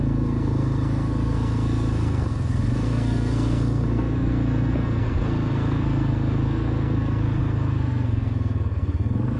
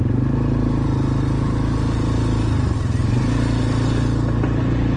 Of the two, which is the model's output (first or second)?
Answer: first